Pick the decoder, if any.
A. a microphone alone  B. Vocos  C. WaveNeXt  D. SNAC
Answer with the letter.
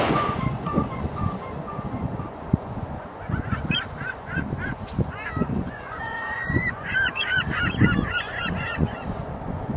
B